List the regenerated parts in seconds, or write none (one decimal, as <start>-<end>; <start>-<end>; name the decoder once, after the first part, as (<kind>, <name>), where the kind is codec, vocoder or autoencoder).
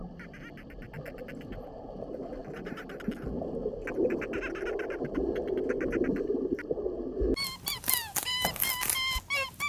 none